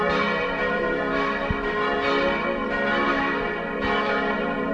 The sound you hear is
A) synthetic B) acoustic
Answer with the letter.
A